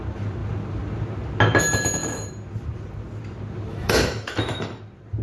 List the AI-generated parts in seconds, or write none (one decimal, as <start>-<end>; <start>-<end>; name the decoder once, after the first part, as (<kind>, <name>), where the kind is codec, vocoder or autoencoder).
3.7-4.8 (autoencoder, DAC-VAE)